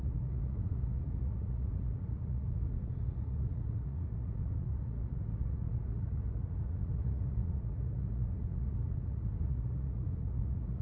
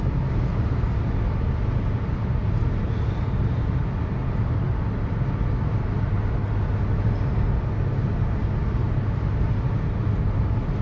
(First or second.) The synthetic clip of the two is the first